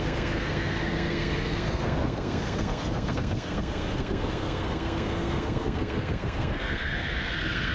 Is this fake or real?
fake